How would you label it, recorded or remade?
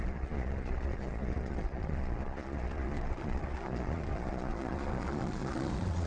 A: remade